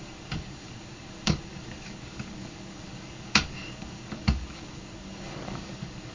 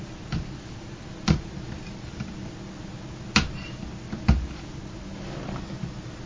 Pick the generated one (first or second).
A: first